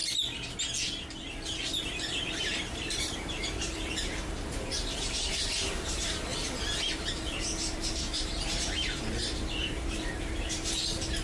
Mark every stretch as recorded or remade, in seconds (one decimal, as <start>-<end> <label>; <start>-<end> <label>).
0.0-2.4 recorded; 2.4-11.2 remade

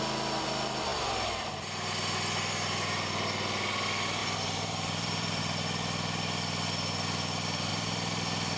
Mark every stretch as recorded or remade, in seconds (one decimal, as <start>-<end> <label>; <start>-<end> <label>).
0.0-4.2 recorded; 4.2-5.4 remade; 5.4-7.7 recorded; 7.7-8.6 remade